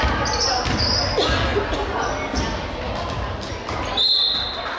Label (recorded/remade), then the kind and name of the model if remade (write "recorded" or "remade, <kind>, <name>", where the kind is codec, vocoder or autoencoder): recorded